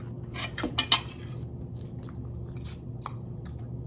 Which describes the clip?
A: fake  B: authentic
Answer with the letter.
B